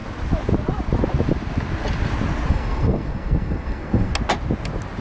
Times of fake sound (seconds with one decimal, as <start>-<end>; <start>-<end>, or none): 2.5-4.1